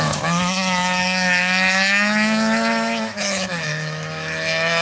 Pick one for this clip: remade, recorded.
remade